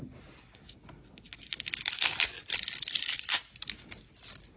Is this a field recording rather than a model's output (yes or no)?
yes